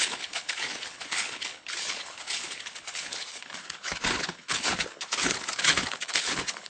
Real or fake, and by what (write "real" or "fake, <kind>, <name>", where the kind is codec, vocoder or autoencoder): fake, codec, HILCodec